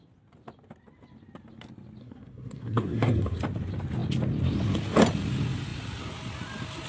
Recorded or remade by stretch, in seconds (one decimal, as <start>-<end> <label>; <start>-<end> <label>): 0.0-2.0 recorded; 2.0-3.4 remade; 3.4-6.9 recorded